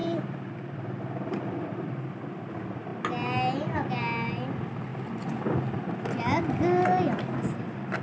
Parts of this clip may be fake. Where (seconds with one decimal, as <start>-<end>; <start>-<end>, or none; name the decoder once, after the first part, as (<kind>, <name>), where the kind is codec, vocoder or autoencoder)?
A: 0.0-2.1 (vocoder, BigVGAN v2)